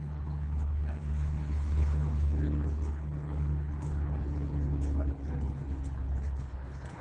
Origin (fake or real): fake